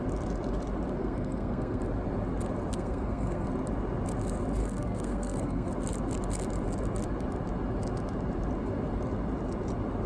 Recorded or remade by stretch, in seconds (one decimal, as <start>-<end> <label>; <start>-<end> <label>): 0.0-1.0 recorded; 1.0-1.8 remade; 1.8-2.7 recorded; 2.7-3.5 remade; 3.5-4.6 recorded; 4.6-5.7 remade; 5.7-10.1 recorded